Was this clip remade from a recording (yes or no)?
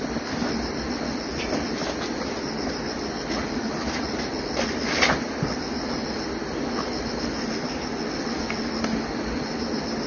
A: no